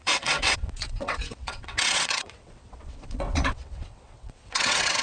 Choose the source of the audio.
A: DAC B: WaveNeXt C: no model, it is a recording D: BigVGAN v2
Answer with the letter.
B